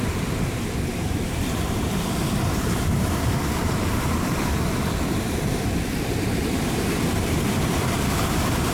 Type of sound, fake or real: fake